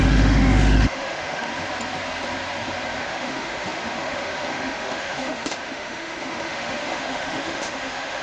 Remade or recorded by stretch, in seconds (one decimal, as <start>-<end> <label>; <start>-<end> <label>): 0.0-1.5 remade; 1.5-3.0 recorded; 3.0-8.2 remade